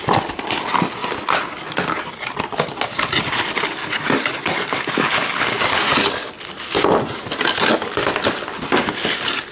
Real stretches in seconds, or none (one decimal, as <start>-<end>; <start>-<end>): 0.0-3.8; 5.6-9.5